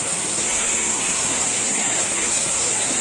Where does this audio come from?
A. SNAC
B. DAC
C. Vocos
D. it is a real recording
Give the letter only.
A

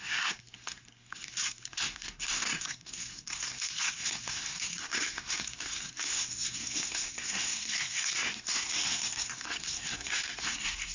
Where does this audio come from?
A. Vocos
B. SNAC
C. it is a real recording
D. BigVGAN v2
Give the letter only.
B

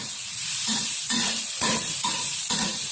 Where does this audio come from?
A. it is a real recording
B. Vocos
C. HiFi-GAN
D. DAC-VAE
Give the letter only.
B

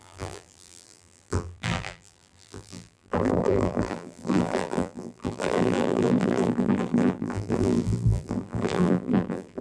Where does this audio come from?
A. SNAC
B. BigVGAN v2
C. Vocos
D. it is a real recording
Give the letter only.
B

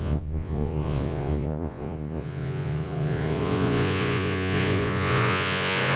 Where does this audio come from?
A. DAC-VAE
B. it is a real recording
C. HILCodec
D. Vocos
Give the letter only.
D